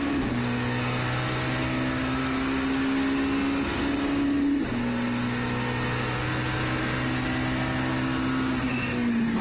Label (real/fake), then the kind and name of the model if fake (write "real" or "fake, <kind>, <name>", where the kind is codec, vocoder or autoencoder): real